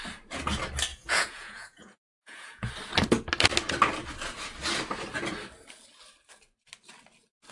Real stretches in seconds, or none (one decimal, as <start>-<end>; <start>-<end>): 0.0-0.9; 2.7-7.5